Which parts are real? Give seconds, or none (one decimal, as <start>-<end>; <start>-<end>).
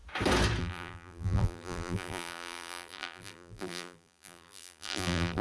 0.0-0.6